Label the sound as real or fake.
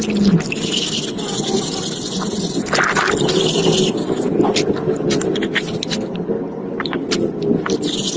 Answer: real